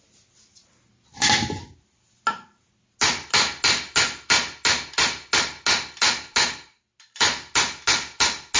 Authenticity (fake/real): real